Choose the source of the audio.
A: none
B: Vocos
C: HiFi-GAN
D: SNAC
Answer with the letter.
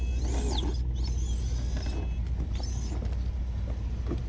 A